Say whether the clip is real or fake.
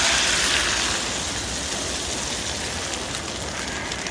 real